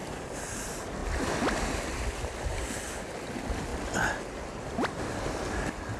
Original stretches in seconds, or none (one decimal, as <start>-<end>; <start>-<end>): 0.0-6.0